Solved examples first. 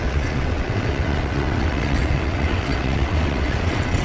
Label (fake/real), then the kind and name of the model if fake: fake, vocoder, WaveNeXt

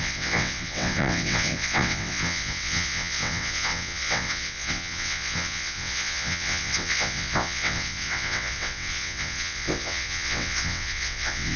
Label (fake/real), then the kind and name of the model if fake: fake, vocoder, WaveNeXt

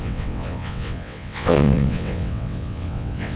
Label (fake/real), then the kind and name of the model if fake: fake, vocoder, WaveNeXt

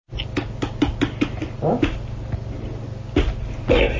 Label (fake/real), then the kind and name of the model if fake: real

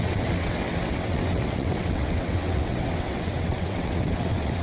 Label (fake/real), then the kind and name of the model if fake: fake, vocoder, WaveNeXt